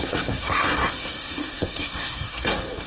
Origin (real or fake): fake